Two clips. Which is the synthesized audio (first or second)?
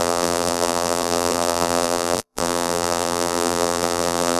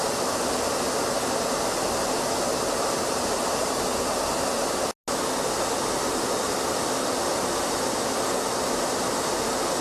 first